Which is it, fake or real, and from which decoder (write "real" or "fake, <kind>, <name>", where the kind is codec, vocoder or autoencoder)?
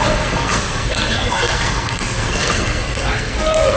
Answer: fake, codec, SNAC